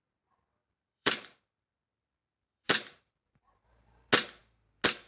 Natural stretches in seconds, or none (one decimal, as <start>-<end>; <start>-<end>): 0.0-0.6; 3.7-5.1